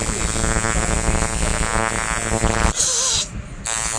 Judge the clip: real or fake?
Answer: real